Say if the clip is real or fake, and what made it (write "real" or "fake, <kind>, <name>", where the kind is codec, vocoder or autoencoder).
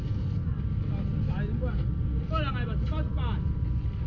real